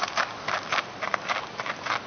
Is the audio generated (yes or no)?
no